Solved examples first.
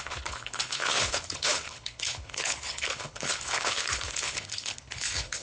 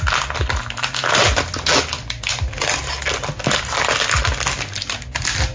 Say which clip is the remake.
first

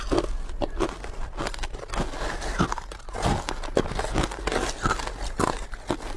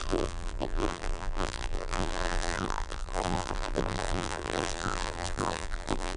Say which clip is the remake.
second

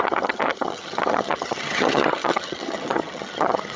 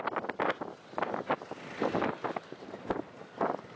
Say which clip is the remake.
first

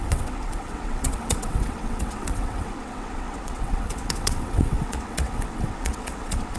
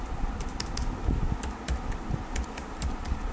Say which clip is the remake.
first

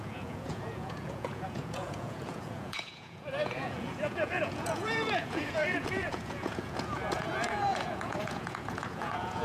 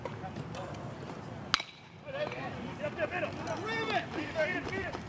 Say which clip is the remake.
first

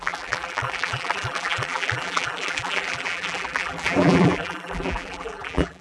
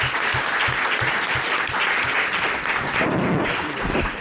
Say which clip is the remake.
first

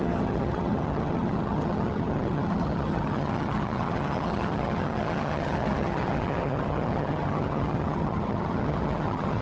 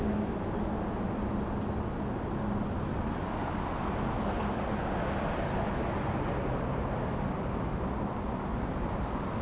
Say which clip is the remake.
first